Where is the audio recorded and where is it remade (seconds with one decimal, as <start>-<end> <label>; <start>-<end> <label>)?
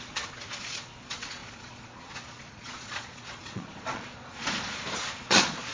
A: 0.0-5.7 remade